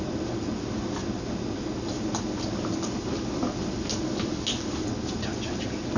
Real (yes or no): yes